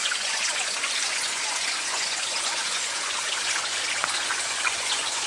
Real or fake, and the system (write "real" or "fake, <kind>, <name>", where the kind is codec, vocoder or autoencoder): fake, vocoder, Vocos